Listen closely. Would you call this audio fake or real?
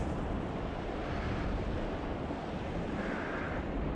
fake